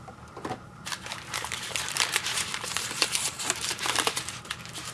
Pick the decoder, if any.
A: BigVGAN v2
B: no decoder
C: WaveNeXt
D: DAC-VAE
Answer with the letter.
A